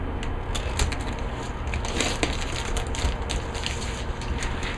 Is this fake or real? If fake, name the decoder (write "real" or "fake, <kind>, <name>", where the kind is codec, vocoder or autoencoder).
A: real